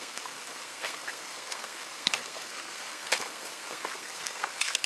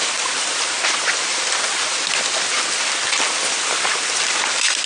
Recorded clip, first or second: second